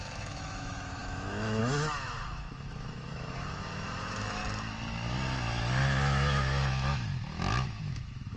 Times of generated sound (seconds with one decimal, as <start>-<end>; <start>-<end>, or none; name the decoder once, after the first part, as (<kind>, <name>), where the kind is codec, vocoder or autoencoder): 0.0-4.4 (autoencoder, DAC-VAE); 5.6-8.4